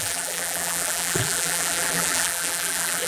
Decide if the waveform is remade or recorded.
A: remade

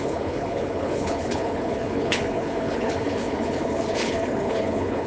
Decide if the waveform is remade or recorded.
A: remade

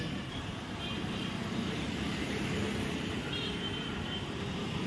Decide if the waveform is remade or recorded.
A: remade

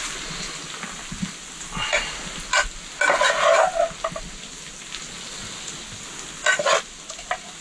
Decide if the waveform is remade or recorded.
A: recorded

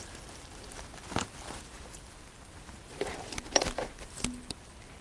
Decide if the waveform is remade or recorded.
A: recorded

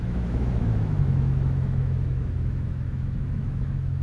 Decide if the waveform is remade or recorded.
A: remade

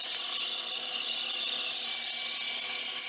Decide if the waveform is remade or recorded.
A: recorded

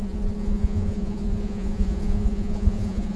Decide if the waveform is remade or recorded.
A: remade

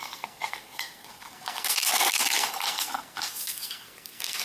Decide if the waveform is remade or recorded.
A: remade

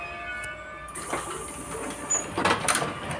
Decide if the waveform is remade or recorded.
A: recorded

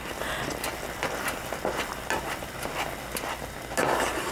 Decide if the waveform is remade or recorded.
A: recorded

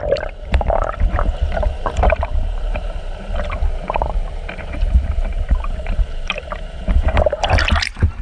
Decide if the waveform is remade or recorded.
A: remade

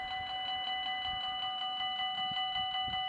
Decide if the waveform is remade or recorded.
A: recorded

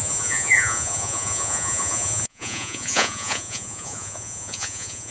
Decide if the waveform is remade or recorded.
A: remade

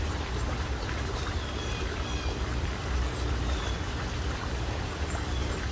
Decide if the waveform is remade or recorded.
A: recorded